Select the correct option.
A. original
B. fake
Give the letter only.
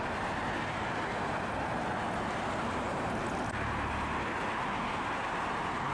A